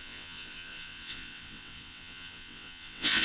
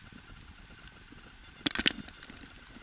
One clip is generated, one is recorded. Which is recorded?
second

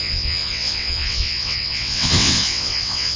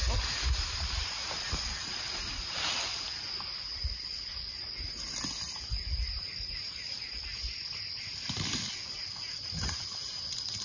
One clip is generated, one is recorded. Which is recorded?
second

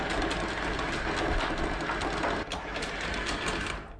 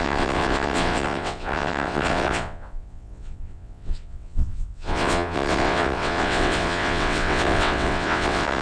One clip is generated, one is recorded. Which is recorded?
first